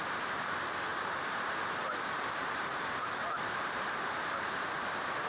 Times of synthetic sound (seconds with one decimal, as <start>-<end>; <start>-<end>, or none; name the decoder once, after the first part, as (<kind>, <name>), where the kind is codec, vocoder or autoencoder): 3.2-3.9 (vocoder, BigVGAN v2)